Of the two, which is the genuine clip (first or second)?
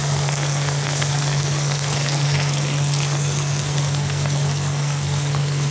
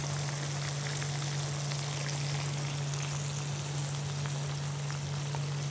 second